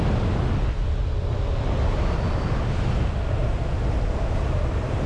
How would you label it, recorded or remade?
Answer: recorded